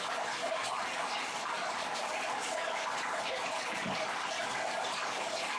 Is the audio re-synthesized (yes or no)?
yes